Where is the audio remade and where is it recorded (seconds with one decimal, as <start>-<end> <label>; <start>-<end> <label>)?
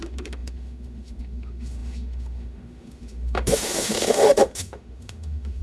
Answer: 0.0-5.6 remade